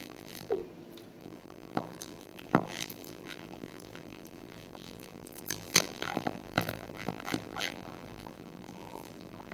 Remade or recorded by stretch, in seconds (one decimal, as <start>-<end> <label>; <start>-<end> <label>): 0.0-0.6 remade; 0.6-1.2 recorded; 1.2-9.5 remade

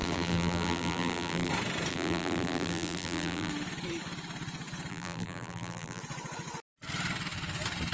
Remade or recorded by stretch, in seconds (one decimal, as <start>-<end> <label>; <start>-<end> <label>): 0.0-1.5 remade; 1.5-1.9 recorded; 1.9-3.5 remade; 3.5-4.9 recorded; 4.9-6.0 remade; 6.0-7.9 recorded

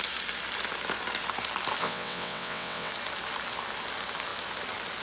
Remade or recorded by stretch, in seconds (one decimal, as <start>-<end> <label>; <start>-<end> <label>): 0.0-1.8 recorded; 1.8-2.9 remade; 2.9-5.0 recorded

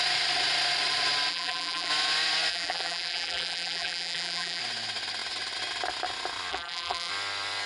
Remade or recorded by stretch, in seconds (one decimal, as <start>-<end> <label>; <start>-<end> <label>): 0.0-1.3 recorded; 1.3-1.9 remade; 1.9-2.5 recorded; 2.5-4.6 remade; 4.6-6.5 recorded; 6.5-7.1 remade; 7.1-7.7 recorded

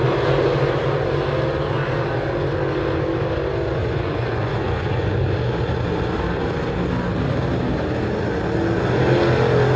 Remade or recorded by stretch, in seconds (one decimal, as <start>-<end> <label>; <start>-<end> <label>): 0.0-3.8 recorded; 3.8-5.1 remade; 5.1-9.8 recorded

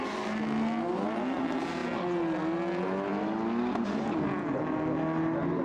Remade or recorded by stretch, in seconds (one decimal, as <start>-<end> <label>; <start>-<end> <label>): 0.0-5.6 recorded

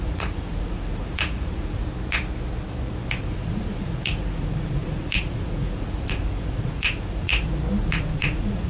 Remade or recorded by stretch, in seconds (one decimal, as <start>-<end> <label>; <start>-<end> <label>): 0.0-1.8 remade; 1.8-3.2 recorded; 3.2-7.3 remade; 7.3-7.9 recorded; 7.9-8.7 remade

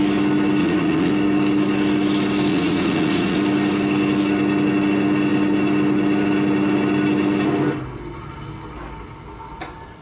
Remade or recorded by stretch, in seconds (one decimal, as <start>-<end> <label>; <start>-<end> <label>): 0.0-0.6 recorded; 0.6-1.1 remade; 1.1-2.5 recorded; 2.5-3.4 remade; 3.4-10.0 recorded